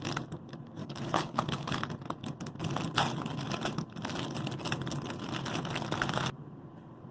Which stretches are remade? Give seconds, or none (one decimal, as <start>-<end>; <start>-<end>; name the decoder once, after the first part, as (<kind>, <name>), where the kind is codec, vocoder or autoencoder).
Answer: 0.8-1.8 (codec, HILCodec)